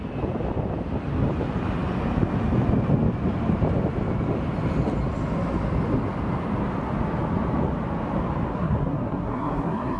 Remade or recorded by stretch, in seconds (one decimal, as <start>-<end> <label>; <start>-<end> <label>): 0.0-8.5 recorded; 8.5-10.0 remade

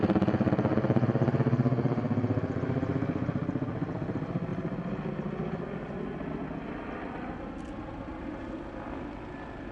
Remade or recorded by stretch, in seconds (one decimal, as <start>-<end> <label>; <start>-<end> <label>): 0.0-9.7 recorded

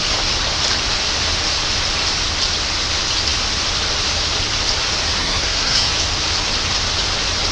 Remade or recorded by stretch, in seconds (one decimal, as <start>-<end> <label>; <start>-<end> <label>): 0.0-5.2 recorded; 5.2-5.9 remade; 5.9-7.5 recorded

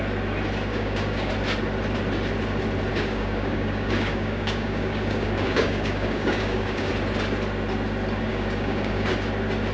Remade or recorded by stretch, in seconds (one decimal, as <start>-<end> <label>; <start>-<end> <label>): 0.0-0.7 recorded; 0.7-1.3 remade; 1.3-2.9 recorded; 2.9-6.9 remade; 6.9-8.3 recorded; 8.3-9.1 remade; 9.1-9.7 recorded